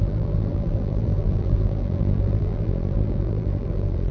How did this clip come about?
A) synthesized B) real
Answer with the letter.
A